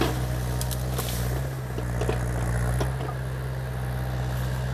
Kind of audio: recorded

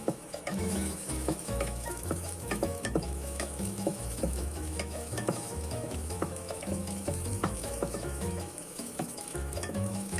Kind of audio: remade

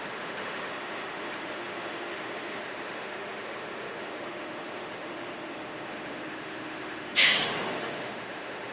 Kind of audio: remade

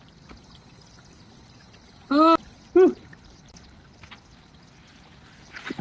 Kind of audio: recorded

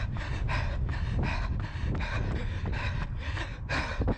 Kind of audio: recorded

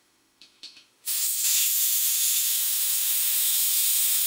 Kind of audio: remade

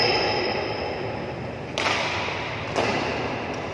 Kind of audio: recorded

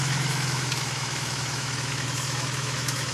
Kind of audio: remade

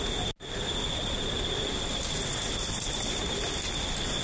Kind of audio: recorded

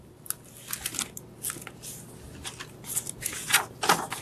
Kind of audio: recorded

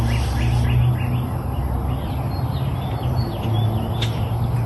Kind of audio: recorded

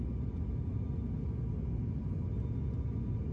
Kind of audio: recorded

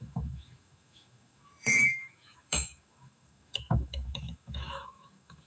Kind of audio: remade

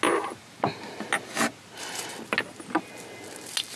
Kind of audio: recorded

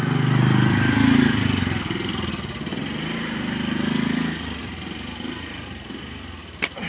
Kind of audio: recorded